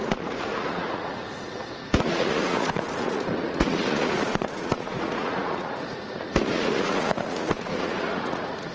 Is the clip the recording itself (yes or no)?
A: no